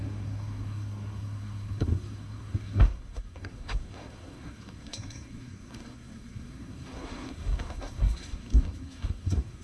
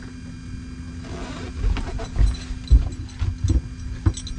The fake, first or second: first